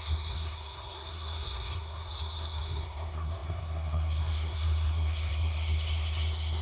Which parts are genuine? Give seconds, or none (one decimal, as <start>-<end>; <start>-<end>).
none

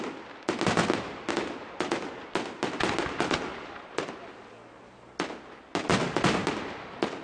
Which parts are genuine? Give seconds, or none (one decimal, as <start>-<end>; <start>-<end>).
0.0-7.2

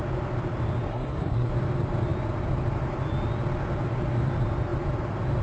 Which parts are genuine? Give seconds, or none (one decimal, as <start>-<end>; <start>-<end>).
0.0-0.9; 1.5-5.4

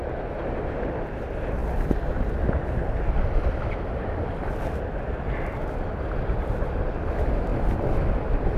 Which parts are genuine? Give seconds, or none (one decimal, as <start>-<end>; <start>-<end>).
0.0-8.6